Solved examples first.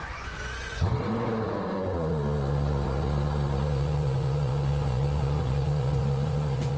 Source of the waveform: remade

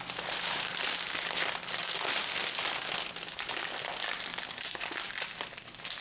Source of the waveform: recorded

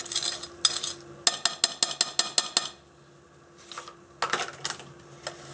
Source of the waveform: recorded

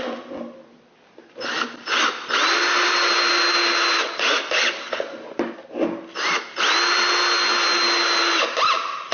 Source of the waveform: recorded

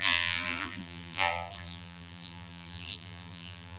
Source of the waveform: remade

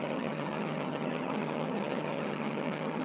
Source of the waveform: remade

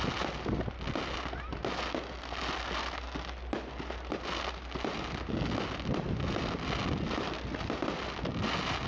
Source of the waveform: recorded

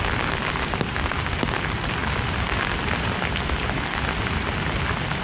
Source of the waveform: recorded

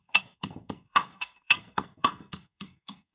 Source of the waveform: remade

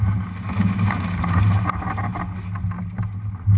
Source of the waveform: recorded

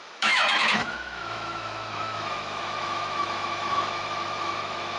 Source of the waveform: remade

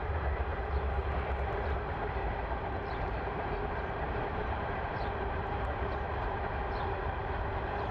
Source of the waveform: remade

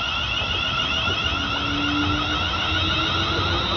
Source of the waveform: recorded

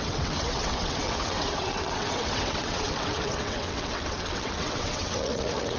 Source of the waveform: remade